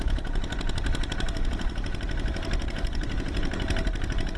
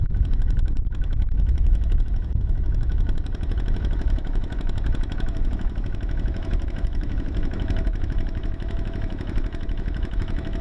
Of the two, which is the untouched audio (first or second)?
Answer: first